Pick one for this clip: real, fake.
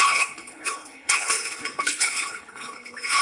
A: fake